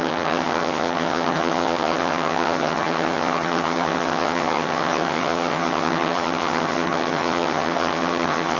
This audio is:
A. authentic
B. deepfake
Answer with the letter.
B